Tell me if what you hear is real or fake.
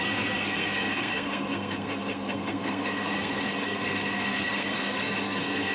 fake